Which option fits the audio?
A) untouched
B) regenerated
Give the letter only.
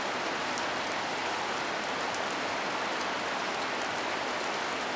A